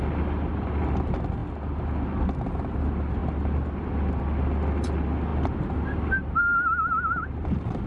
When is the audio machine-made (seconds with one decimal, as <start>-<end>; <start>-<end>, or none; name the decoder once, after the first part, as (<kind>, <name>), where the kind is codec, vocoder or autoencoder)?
none